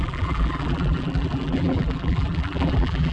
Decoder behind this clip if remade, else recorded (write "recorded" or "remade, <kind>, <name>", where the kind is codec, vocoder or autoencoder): remade, vocoder, BigVGAN v2